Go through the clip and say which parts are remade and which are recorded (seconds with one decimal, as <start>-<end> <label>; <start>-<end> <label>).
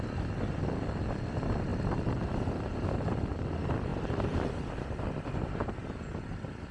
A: 0.0-3.9 recorded; 3.9-4.5 remade; 4.5-6.7 recorded